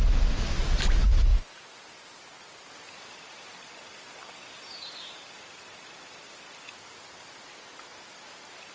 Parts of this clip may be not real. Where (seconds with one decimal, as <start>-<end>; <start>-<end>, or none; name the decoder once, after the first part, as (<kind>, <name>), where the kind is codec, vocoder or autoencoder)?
none